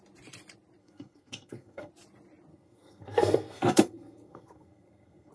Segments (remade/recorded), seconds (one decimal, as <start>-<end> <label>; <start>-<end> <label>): 0.0-0.8 recorded; 0.8-1.9 remade; 1.9-2.5 recorded; 2.5-5.3 remade